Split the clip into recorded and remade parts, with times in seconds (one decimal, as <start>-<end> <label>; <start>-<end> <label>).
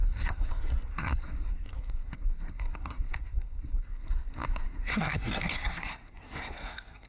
0.0-7.1 remade